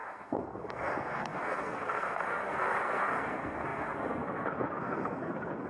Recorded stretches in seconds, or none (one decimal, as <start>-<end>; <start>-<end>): none